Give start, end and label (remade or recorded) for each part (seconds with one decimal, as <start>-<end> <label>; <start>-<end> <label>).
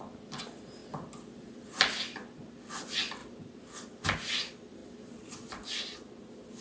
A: 0.0-3.2 recorded; 3.2-3.9 remade; 3.9-4.8 recorded; 4.8-5.5 remade; 5.5-6.6 recorded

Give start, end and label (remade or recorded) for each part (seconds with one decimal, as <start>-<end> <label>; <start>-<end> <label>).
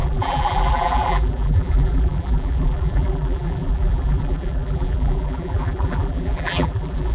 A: 0.0-7.1 remade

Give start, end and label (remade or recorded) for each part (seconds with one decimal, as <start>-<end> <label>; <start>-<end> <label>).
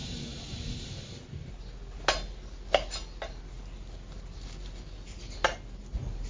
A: 0.0-1.1 remade; 1.1-6.3 recorded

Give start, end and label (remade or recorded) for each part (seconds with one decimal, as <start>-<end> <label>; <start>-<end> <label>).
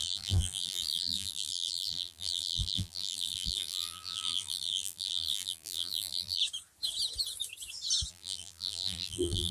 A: 0.0-6.4 remade; 6.4-8.1 recorded; 8.1-9.5 remade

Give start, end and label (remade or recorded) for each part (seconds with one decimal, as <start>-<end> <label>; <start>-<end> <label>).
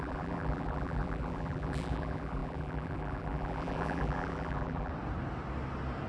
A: 0.0-4.9 remade; 4.9-6.1 recorded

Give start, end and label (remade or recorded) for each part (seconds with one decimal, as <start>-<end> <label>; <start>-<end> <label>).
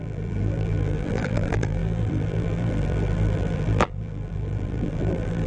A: 0.0-5.5 remade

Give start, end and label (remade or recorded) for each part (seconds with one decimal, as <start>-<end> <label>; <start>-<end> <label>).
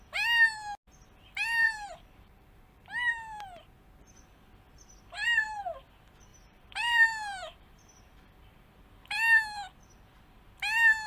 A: 0.0-1.6 recorded; 1.6-3.6 remade; 3.6-6.3 recorded; 6.3-8.7 remade; 8.7-11.1 recorded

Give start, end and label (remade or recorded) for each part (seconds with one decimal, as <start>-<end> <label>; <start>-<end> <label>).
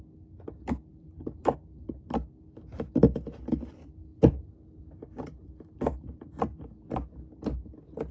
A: 0.0-0.9 recorded; 0.9-1.6 remade; 1.6-4.1 recorded; 4.1-6.4 remade; 6.4-8.1 recorded